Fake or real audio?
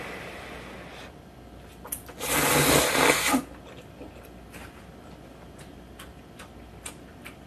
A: real